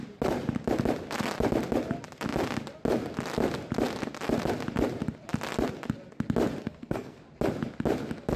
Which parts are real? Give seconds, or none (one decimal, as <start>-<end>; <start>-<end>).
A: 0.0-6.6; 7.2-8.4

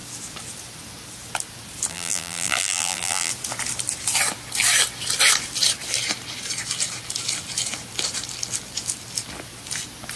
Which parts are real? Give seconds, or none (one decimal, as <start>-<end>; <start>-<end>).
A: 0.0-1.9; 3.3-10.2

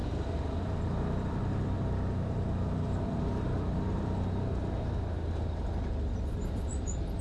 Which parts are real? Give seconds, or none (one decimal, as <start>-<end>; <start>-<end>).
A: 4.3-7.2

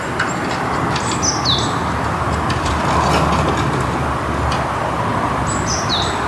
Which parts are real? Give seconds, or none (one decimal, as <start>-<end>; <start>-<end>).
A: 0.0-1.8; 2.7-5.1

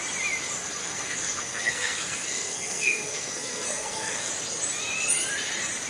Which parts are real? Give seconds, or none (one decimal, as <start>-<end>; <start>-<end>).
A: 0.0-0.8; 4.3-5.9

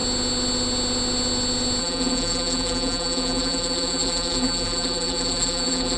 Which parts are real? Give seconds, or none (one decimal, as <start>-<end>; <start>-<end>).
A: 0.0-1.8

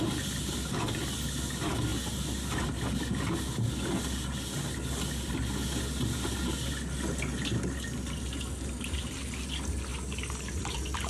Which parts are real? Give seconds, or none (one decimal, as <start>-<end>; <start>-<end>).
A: 0.0-11.1

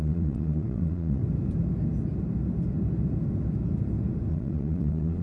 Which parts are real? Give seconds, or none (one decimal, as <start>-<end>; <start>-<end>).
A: 1.2-4.3